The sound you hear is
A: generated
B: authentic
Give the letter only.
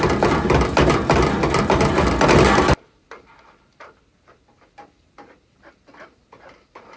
B